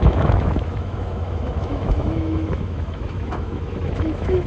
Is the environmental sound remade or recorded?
remade